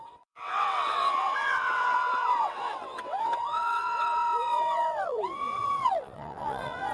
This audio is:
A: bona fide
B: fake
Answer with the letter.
B